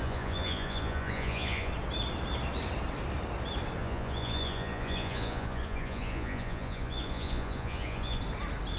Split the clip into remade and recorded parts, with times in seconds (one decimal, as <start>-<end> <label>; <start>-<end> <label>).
0.0-1.7 remade; 1.7-3.8 recorded; 3.8-8.2 remade; 8.2-8.8 recorded